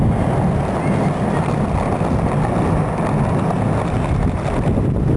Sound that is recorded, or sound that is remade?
recorded